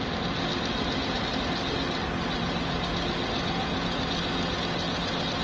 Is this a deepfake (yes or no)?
no